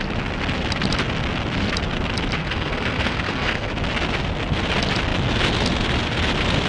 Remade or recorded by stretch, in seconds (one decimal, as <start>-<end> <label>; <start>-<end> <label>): 0.0-2.4 recorded; 2.4-3.7 remade; 3.7-6.7 recorded